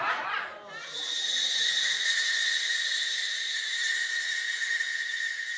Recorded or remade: recorded